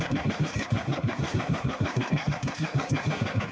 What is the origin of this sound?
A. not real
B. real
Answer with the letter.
A